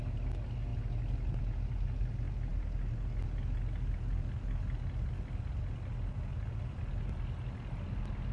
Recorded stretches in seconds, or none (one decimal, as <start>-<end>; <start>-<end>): 0.0-8.3